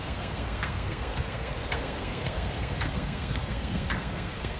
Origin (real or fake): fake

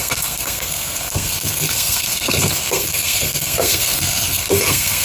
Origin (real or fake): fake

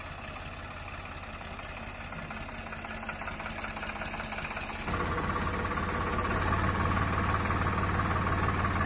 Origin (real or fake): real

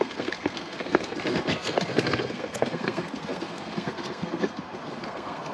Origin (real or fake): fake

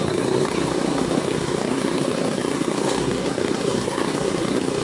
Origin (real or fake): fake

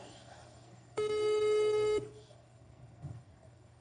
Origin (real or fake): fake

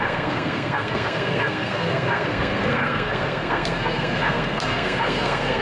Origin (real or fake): fake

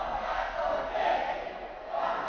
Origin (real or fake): fake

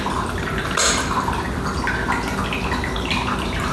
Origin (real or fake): real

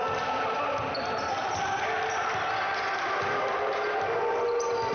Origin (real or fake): real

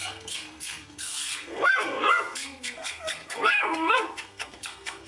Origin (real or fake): fake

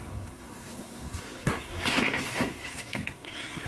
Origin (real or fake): fake